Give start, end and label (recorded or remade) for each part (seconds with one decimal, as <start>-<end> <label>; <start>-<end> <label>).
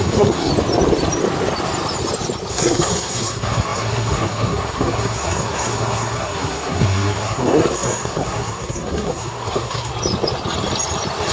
0.0-0.5 remade; 0.5-2.5 recorded; 2.5-9.9 remade; 9.9-11.3 recorded